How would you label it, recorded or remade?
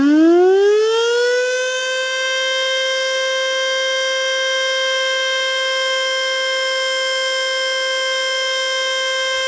recorded